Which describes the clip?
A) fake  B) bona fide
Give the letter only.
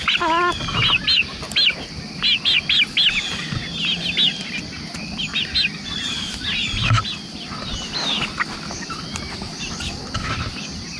B